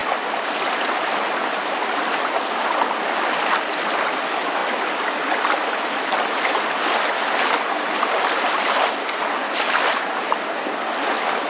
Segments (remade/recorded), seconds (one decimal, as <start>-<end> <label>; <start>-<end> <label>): 0.0-4.6 remade; 4.6-8.6 recorded; 8.6-11.5 remade